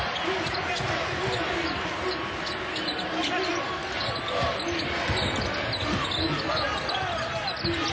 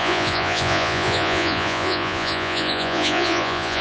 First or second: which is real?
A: first